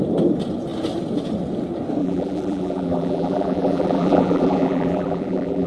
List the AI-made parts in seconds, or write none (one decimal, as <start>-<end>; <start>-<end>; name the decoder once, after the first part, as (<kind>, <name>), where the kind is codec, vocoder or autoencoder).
2.0-5.7 (vocoder, BigVGAN v2)